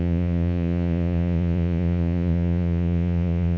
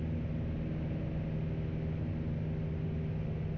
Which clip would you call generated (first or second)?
first